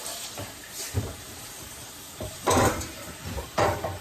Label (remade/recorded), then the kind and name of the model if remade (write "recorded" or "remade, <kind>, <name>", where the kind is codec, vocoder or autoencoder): remade, vocoder, BigVGAN v2